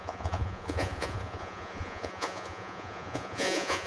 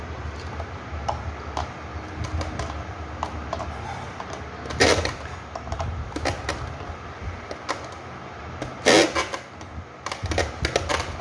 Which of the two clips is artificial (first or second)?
first